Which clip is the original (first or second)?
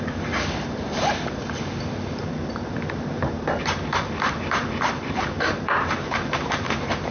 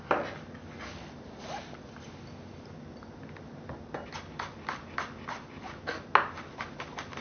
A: second